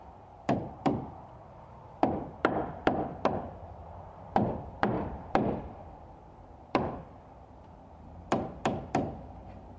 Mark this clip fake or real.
fake